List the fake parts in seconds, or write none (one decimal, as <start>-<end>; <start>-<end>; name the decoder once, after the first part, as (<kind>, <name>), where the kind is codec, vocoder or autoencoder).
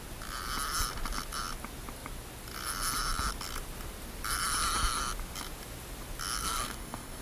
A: 6.4-7.2 (codec, SNAC)